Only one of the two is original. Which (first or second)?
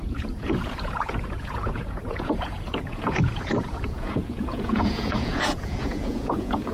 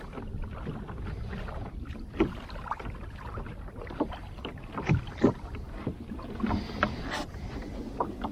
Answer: second